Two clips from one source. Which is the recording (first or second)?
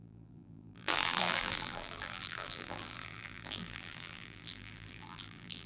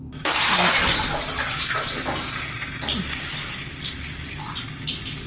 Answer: second